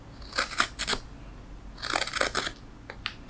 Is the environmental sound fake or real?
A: real